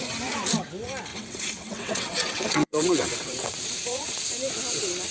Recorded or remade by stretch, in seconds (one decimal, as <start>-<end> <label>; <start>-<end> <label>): 0.0-1.1 recorded; 1.1-4.2 remade; 4.2-5.1 recorded